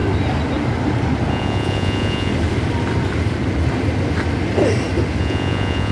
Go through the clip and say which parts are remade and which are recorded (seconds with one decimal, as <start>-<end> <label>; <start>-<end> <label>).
0.0-1.3 recorded; 1.3-2.3 remade; 2.3-5.2 recorded; 5.2-5.9 remade